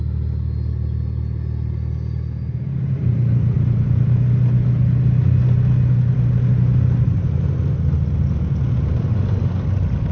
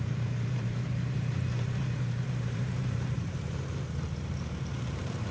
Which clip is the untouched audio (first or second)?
first